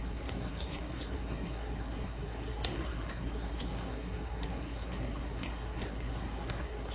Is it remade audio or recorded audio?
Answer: remade